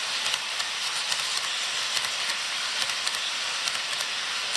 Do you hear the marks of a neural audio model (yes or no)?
no